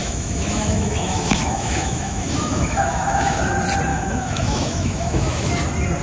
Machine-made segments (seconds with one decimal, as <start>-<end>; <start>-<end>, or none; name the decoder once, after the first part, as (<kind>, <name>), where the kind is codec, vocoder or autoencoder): 0.0-3.4 (autoencoder, DAC-VAE); 3.9-5.5